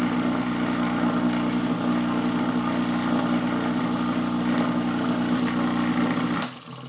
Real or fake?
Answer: real